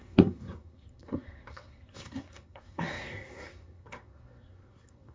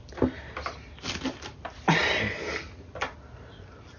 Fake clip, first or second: first